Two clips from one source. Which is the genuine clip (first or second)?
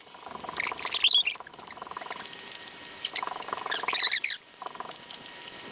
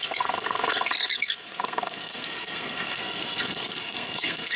first